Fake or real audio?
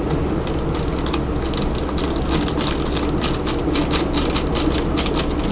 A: real